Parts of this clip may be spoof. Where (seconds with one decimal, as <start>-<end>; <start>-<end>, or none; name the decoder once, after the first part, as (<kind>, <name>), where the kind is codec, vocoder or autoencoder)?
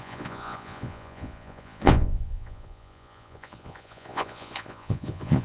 0.0-5.4 (vocoder, Vocos)